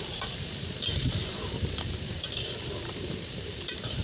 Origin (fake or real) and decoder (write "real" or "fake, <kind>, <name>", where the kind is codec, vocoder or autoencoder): fake, vocoder, BigVGAN v2